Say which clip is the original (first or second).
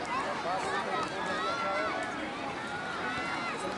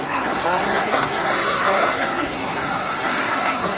first